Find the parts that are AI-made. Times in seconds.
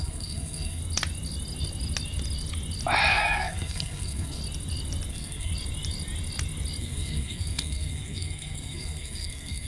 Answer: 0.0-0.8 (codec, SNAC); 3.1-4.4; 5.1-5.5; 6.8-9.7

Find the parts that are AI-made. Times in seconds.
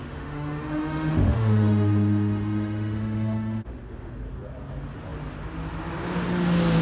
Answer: 0.0-4.1 (autoencoder, DAC-VAE)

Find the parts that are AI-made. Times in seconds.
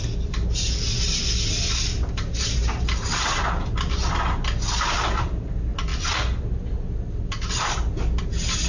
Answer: none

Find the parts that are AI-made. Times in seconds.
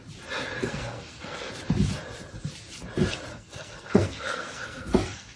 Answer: 0.6-1.5 (codec, SNAC); 3.3-5.4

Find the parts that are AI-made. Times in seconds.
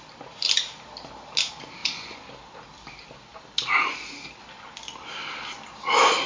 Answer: 1.8-2.3 (vocoder, Vocos)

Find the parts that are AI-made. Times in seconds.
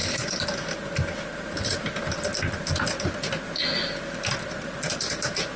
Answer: none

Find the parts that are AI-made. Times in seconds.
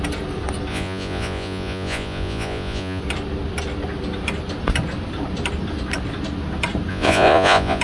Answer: 0.7-3.0 (vocoder, Vocos); 6.9-7.8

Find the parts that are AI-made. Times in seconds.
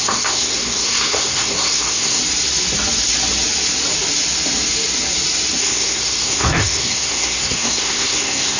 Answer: 0.0-2.2 (codec, SNAC); 5.6-8.6